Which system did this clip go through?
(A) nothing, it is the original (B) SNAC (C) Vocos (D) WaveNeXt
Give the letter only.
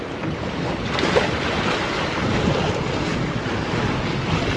A